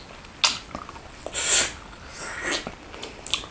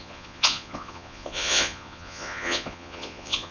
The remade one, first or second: second